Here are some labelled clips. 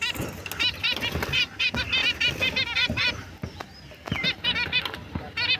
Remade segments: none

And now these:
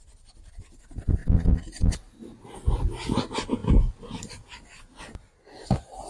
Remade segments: none

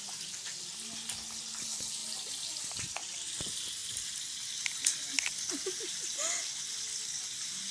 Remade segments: none

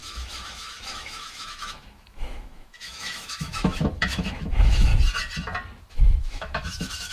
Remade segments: 0.0-4.9 (autoencoder, DAC-VAE); 5.9-7.1

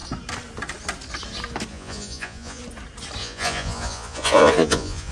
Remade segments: 1.7-2.6 (vocoder, Vocos); 3.2-5.1

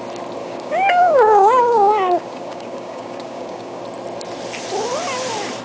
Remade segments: 0.4-3.8 (codec, DAC)